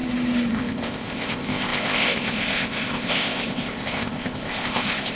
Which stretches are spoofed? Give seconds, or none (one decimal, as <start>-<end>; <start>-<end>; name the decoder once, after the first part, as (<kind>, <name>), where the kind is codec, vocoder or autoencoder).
0.5-5.2 (codec, ZipCodec)